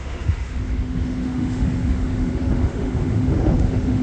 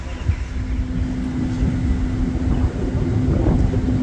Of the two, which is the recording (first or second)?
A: second